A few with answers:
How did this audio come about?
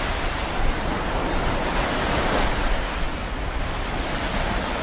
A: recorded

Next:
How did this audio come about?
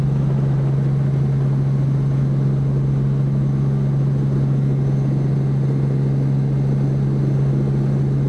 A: recorded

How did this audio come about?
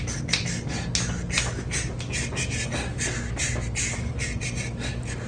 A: recorded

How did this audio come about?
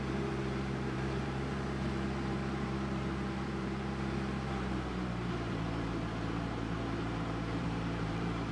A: remade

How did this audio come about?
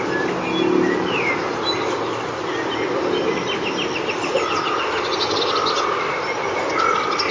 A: recorded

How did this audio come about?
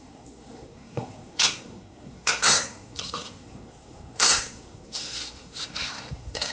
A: remade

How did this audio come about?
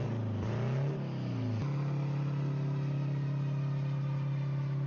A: recorded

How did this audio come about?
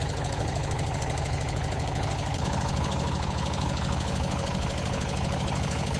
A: remade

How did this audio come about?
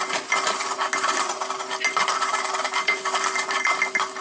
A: recorded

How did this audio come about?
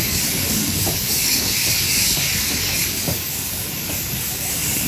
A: remade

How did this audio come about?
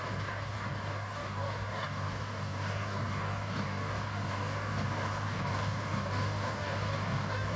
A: remade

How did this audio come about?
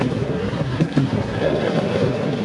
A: remade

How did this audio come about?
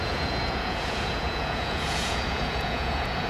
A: remade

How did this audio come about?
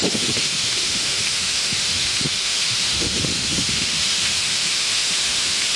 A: remade